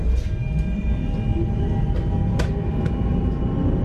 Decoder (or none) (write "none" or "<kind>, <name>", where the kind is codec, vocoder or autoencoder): none